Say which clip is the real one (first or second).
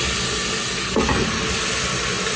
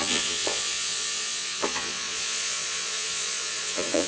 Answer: first